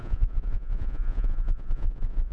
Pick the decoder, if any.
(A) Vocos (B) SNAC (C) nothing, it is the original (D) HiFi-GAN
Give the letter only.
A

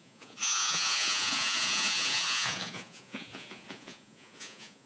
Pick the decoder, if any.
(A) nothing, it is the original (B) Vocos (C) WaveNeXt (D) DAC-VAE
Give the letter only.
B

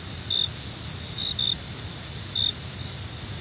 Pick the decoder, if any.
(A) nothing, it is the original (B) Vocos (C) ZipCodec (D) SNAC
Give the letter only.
A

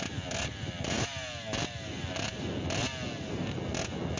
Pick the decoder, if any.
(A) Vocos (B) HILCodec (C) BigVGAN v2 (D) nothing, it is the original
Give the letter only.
D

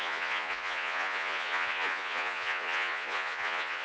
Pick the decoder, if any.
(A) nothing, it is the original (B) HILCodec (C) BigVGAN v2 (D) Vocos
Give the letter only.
D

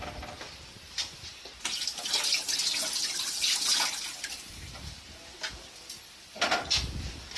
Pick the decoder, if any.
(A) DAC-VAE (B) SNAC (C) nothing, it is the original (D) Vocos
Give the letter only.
C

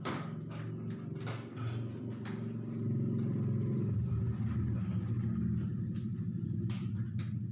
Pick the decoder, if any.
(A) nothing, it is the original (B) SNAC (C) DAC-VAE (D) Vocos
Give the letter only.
A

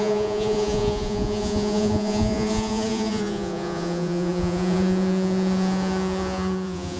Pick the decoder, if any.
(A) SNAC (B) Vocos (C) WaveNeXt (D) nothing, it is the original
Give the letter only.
B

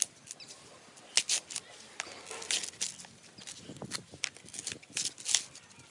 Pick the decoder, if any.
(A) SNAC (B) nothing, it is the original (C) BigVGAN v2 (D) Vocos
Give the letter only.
B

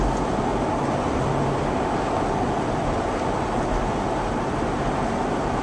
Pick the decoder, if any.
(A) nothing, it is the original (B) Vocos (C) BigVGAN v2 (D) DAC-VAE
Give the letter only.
A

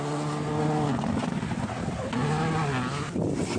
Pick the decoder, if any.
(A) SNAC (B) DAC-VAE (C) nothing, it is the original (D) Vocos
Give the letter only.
C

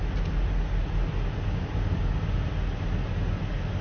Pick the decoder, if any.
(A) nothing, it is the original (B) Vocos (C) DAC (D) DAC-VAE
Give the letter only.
A